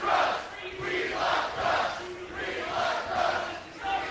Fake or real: real